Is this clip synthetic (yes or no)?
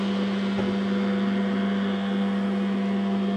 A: no